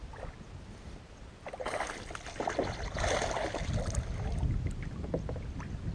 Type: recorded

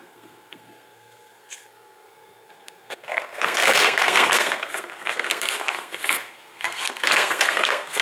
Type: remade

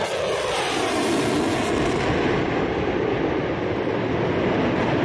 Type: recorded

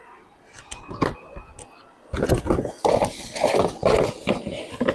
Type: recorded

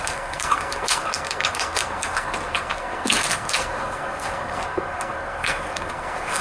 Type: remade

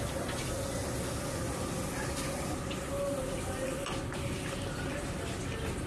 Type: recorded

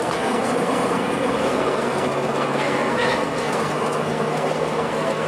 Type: remade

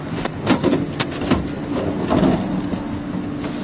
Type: recorded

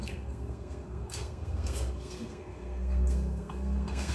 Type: remade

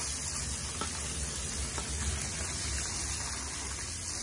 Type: recorded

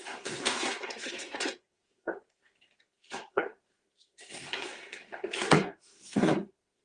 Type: remade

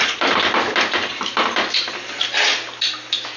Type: recorded